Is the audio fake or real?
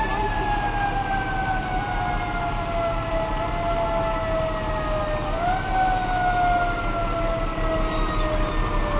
real